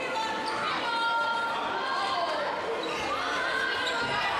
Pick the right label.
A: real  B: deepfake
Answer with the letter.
A